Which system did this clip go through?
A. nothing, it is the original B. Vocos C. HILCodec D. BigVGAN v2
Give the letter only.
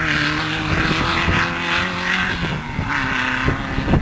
A